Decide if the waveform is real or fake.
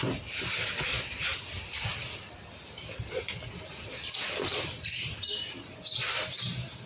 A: real